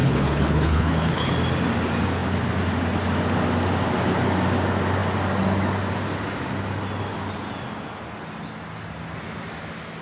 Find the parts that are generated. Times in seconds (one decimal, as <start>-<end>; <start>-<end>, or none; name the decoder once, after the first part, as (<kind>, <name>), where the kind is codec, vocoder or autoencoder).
0.0-1.3 (codec, HILCodec)